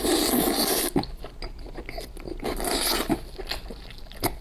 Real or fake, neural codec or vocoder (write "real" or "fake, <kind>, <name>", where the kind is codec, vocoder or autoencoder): real